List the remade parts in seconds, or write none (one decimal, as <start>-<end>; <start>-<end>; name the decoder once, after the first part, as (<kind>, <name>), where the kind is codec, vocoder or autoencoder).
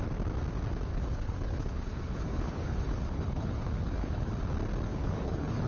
0.9-4.3 (codec, HILCodec); 4.9-5.7